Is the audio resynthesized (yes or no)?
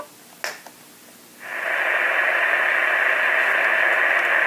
no